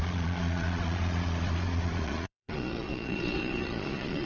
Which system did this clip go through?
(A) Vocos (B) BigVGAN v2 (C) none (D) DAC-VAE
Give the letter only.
A